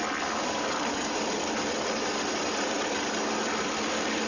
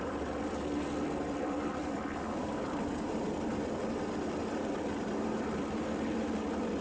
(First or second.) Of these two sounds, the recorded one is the first